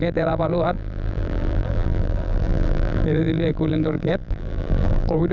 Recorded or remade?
remade